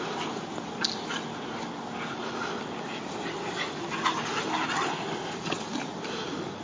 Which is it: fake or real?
real